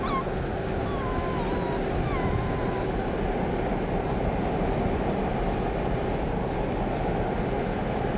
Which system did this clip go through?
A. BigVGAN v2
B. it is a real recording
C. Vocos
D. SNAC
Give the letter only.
B